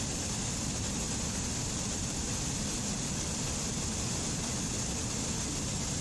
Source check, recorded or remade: recorded